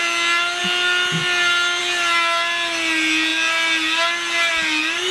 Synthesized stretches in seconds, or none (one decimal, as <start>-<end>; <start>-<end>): none